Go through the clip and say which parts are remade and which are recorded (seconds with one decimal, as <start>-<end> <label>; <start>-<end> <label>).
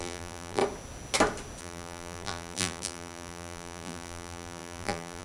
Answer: 0.0-0.6 remade; 0.6-1.6 recorded; 1.6-5.2 remade